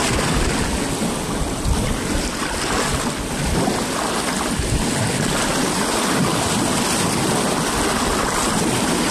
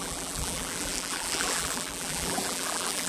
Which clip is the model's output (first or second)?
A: second